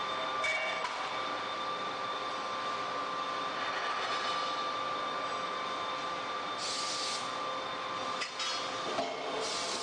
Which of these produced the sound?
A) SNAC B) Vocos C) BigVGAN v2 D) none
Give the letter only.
D